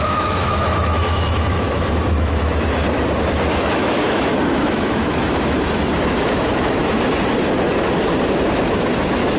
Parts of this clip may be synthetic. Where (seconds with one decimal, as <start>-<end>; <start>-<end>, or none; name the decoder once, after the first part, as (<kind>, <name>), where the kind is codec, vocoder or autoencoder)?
0.0-2.5 (autoencoder, DAC-VAE); 3.6-6.8